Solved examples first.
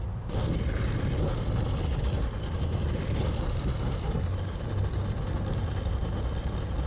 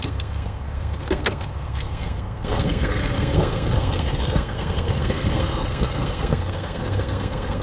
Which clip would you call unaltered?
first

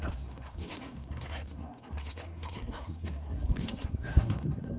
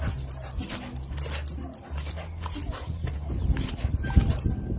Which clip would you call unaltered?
second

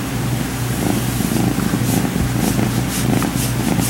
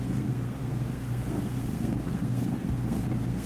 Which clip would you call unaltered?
first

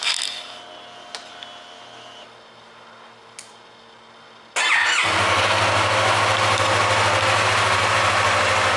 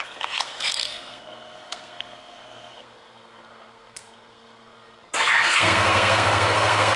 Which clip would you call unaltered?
first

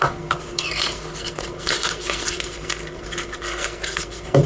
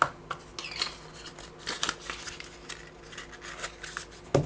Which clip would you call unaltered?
second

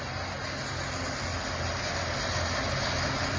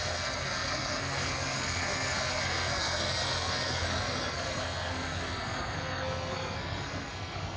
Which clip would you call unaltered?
first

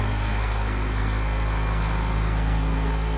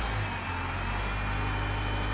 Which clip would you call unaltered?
second